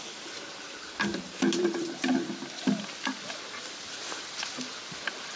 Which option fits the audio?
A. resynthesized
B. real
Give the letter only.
B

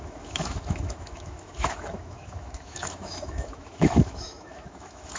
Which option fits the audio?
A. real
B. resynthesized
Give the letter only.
B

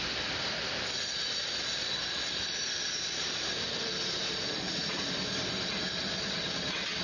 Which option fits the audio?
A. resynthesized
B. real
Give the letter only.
A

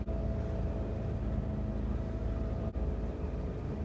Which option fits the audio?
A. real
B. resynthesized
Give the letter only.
A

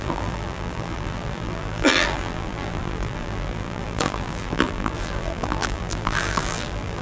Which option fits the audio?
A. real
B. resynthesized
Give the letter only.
B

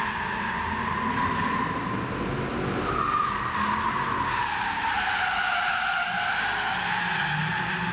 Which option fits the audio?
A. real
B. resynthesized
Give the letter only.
A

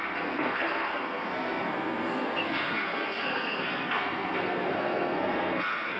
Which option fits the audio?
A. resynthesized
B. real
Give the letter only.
A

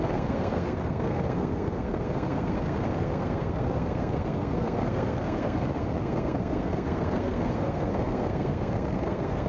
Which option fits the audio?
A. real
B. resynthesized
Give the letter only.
B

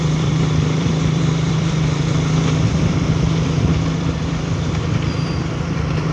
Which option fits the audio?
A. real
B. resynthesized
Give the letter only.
B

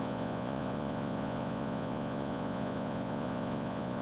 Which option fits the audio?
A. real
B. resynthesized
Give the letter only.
B